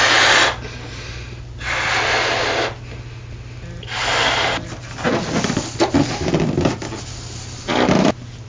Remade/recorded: recorded